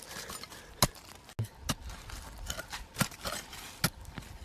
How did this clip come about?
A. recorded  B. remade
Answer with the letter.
A